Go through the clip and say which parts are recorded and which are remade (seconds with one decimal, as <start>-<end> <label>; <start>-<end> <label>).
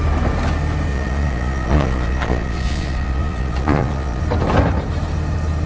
0.0-0.9 recorded; 0.9-4.2 remade; 4.2-5.7 recorded